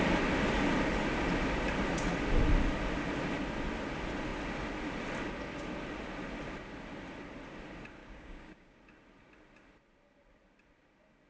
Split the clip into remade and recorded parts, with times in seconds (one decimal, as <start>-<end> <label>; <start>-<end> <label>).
0.0-8.0 recorded; 8.0-8.8 remade; 8.8-11.3 recorded